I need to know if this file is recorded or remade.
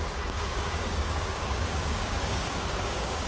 remade